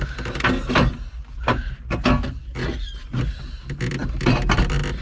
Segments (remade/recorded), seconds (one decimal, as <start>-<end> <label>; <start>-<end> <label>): 0.0-5.0 recorded